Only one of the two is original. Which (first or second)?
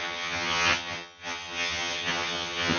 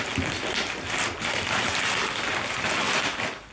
second